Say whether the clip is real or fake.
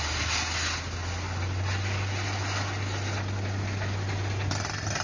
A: real